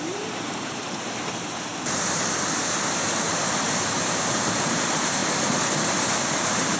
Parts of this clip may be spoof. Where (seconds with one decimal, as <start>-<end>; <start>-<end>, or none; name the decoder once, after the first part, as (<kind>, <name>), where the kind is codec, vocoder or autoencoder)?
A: 0.0-1.7 (vocoder, BigVGAN v2); 2.6-5.2; 5.9-6.8